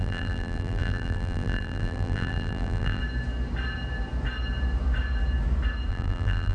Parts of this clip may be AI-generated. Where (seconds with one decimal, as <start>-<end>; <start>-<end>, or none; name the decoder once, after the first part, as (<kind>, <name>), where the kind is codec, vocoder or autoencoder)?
0.0-3.0 (vocoder, BigVGAN v2); 5.9-6.5